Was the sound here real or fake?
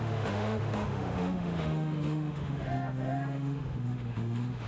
fake